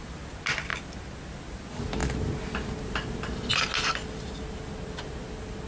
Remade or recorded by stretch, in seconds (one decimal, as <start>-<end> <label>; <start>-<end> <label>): 0.0-5.7 recorded